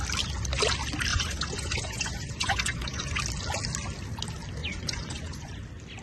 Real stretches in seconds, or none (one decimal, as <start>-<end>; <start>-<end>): 0.0-1.1; 3.2-4.6; 5.5-6.0

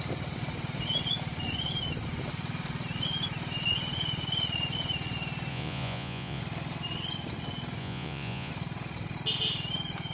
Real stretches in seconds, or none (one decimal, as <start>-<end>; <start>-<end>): 0.0-5.5; 6.4-7.8; 8.5-10.1

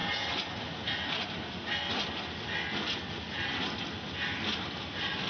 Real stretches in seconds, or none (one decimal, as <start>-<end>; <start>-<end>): 0.0-5.3

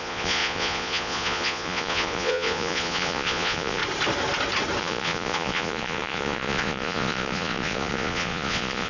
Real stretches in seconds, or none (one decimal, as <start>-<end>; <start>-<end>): 3.8-4.8

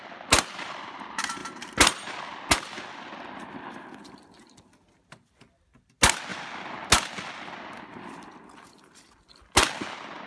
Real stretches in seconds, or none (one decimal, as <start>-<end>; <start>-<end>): 0.0-10.3

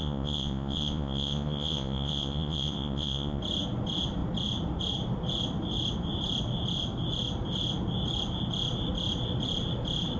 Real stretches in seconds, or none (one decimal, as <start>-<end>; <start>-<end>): 3.4-10.2

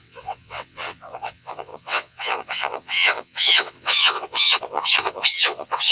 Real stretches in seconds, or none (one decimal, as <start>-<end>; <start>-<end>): none